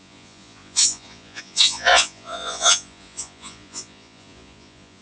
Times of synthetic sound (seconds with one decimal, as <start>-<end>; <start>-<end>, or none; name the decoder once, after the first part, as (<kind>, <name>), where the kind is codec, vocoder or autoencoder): 0.0-5.0 (vocoder, Vocos)